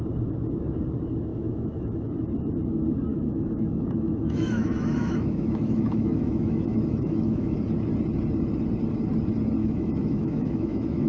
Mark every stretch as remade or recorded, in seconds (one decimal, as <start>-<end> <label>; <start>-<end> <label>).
0.0-1.3 recorded; 1.3-2.1 remade; 2.1-3.1 recorded; 3.1-7.6 remade; 7.6-9.6 recorded; 9.6-11.1 remade